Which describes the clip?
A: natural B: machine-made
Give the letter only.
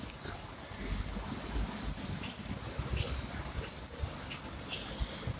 A